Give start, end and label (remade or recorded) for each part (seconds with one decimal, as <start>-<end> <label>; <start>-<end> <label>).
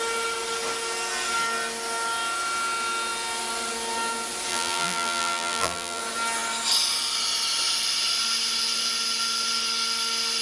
0.0-4.5 recorded; 4.5-6.0 remade; 6.0-10.4 recorded